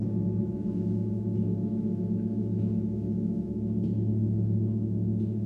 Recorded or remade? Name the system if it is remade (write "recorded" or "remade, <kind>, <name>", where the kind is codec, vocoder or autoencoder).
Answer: remade, autoencoder, DAC-VAE